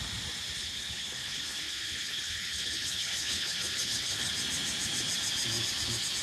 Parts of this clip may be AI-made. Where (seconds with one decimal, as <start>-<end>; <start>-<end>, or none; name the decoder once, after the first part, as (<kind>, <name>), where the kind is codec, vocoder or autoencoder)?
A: 0.6-4.3 (codec, HILCodec)